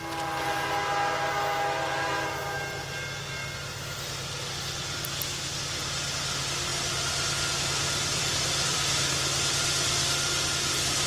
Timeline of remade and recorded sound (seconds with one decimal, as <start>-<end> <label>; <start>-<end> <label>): 0.0-11.1 recorded